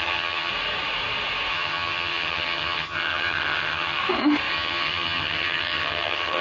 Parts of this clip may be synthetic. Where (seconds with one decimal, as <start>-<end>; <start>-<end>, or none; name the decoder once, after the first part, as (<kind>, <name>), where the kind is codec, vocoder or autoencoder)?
0.0-0.5 (vocoder, HiFi-GAN); 1.5-4.0; 4.5-6.4